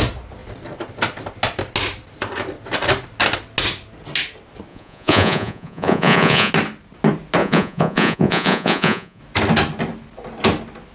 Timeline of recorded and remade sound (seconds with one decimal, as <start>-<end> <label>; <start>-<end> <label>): 0.0-4.7 recorded; 4.7-6.5 remade; 6.5-7.4 recorded; 7.4-9.2 remade; 9.2-10.9 recorded